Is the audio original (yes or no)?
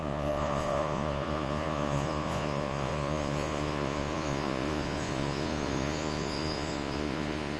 no